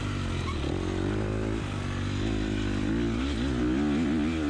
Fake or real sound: real